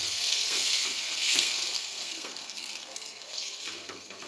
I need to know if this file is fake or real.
fake